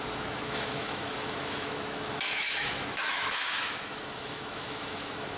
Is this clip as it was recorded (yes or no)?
no